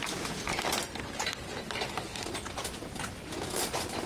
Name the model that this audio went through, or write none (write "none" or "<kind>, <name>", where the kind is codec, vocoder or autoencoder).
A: none